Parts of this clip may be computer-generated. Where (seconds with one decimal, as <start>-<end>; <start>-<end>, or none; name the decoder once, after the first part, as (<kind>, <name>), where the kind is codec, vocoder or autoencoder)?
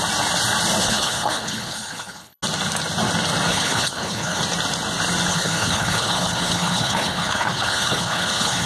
0.8-2.4 (codec, HILCodec); 3.5-4.4; 5.3-8.7